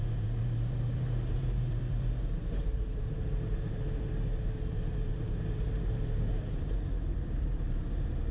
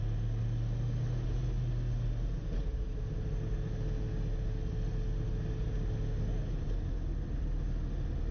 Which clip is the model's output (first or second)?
first